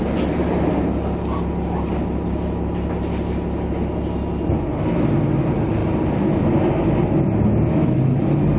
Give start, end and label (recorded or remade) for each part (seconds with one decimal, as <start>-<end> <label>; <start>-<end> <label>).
0.0-8.6 recorded

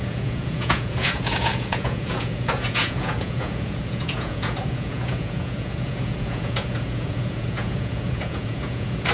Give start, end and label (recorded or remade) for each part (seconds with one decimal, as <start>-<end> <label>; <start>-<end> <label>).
0.0-9.1 remade